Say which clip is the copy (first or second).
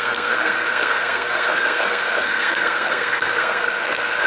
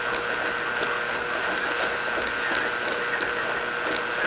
first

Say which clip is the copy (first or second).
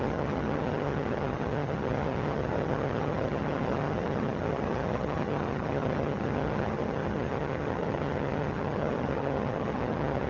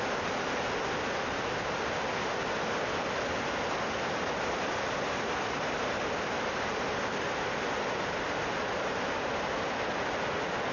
first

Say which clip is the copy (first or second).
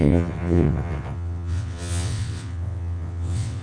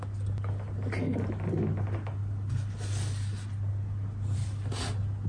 first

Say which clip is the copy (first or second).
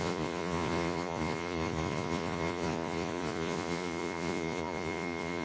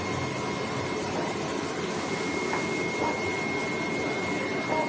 first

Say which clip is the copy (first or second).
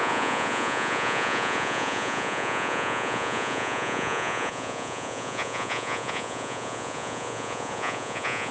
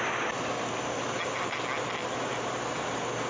first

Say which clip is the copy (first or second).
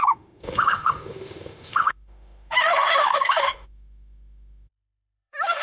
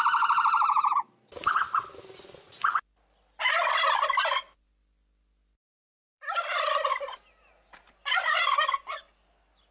first